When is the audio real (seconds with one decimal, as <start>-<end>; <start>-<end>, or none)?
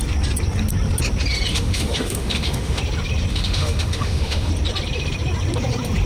0.0-1.5; 2.8-3.3; 4.5-6.1